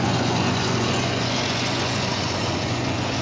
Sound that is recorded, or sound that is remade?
remade